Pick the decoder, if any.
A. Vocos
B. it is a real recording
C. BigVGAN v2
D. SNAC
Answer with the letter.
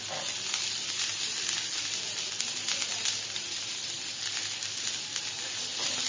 B